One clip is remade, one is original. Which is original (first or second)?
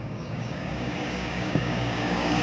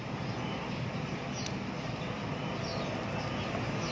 second